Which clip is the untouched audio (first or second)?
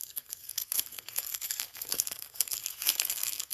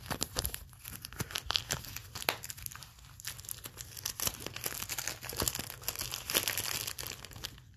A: second